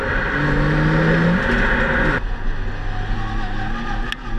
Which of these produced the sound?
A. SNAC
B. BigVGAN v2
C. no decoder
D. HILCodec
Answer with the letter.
C